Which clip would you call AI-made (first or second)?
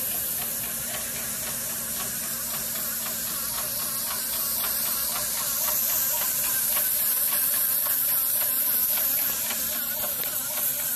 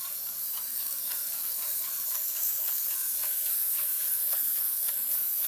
second